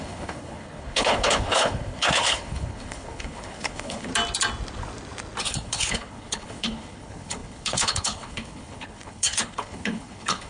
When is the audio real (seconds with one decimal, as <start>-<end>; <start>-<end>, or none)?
4.1-5.4